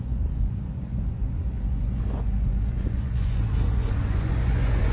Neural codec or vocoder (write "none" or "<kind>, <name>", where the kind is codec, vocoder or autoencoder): vocoder, Vocos